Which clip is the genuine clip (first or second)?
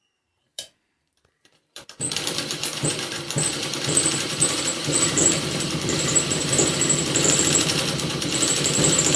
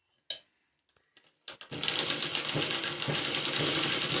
second